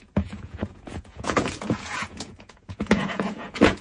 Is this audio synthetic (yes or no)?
yes